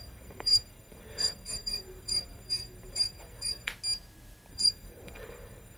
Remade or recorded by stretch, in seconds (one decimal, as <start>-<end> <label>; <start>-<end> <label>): 0.0-3.7 remade; 3.7-4.5 recorded; 4.5-5.8 remade